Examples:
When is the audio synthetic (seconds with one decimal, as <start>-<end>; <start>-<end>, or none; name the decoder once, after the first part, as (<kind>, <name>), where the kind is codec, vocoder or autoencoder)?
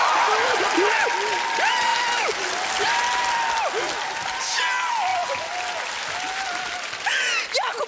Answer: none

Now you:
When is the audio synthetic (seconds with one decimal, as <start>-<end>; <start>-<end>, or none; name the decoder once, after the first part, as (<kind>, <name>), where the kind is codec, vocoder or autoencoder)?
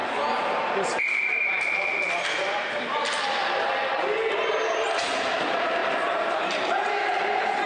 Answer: 0.0-2.0 (vocoder, BigVGAN v2); 4.3-5.8; 6.4-7.7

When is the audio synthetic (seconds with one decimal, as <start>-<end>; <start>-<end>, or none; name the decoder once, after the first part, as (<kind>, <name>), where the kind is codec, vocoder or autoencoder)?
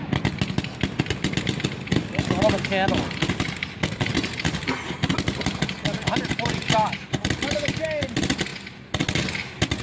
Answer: none